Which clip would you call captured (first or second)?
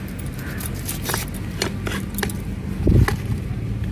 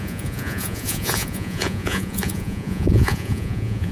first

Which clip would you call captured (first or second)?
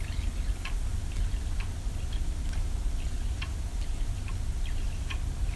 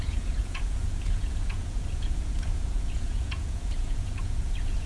first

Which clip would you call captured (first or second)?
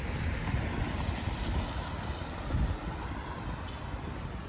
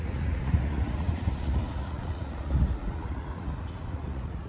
first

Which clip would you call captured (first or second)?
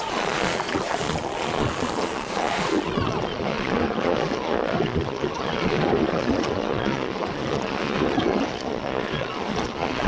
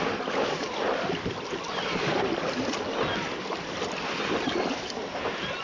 second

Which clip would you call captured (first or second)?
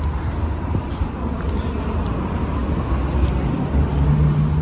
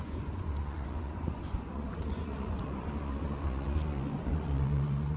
first